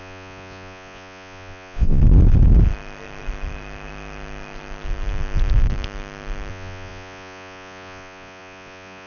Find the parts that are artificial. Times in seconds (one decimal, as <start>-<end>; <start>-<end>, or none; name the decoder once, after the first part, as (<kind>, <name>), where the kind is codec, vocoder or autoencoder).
0.0-2.0 (vocoder, Vocos); 6.5-9.1